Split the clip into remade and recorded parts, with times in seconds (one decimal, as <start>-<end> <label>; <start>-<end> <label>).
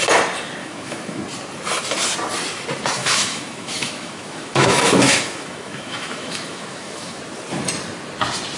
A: 0.0-0.6 recorded; 0.6-1.2 remade; 1.2-3.0 recorded; 3.0-7.2 remade; 7.2-8.6 recorded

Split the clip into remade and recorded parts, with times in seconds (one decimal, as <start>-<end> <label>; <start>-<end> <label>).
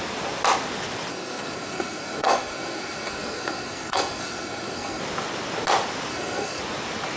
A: 0.0-1.1 recorded; 1.1-5.0 remade; 5.0-6.1 recorded; 6.1-6.6 remade; 6.6-7.2 recorded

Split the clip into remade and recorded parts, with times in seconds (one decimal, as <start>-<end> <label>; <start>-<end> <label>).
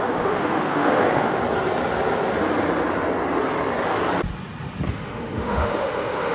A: 0.0-1.4 remade; 1.4-4.9 recorded; 4.9-6.3 remade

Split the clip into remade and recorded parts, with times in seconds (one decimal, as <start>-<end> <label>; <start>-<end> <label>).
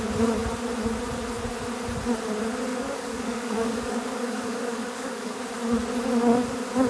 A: 0.0-2.7 recorded; 2.7-5.4 remade; 5.4-6.9 recorded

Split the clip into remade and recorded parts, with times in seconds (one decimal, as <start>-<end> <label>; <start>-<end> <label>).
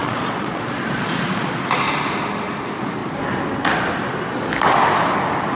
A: 0.0-1.6 remade; 1.6-5.5 recorded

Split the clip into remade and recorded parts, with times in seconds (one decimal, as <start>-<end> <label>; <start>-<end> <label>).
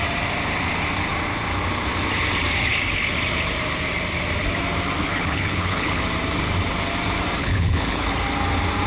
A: 0.0-5.0 recorded; 5.0-6.0 remade; 6.0-7.4 recorded; 7.4-8.1 remade; 8.1-8.9 recorded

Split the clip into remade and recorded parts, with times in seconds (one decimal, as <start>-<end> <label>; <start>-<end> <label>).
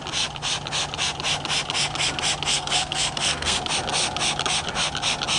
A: 0.0-2.5 recorded; 2.5-3.6 remade; 3.6-5.4 recorded